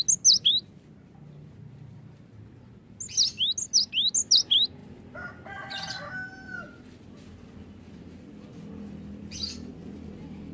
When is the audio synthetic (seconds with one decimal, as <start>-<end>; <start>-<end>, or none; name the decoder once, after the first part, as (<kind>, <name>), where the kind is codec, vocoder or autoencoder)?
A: none